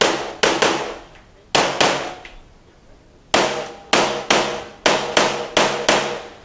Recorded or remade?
recorded